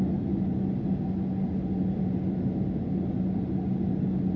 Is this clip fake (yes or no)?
no